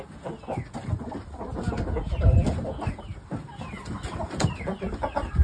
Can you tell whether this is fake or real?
real